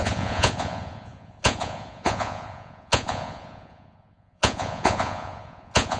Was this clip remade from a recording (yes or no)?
yes